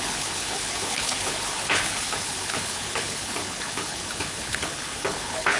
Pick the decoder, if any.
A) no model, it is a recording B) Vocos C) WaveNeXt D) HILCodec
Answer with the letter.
D